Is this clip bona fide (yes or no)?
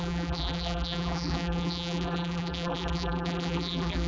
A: no